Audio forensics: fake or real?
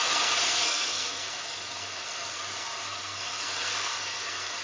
fake